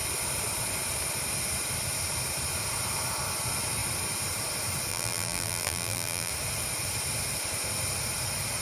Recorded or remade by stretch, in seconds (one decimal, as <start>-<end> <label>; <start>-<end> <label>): 0.0-4.9 recorded; 4.9-6.3 remade; 6.3-8.6 recorded